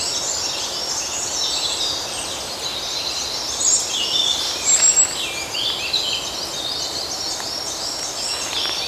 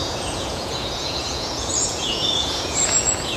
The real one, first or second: first